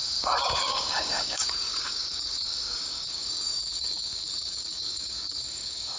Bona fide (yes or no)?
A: no